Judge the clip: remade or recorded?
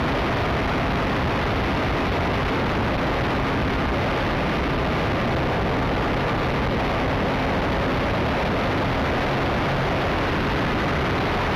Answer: recorded